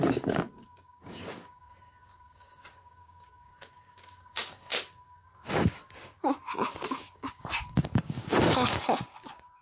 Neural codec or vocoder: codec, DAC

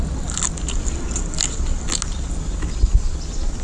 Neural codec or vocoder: none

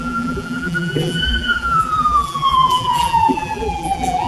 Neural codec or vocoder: vocoder, BigVGAN v2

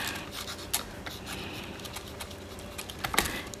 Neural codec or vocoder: none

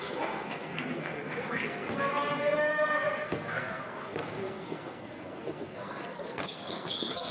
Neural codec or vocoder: codec, SNAC